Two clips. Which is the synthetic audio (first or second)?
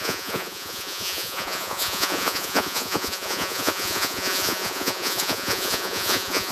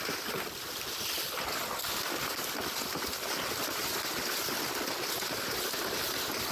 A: first